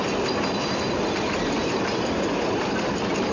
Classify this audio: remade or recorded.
recorded